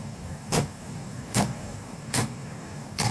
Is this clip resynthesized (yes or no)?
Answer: yes